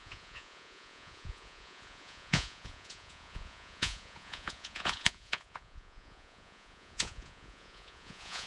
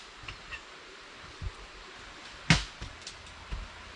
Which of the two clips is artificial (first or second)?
first